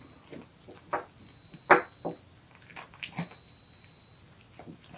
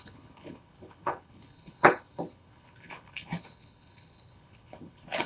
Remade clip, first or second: second